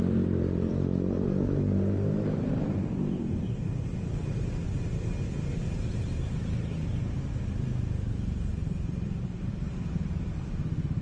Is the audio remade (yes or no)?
yes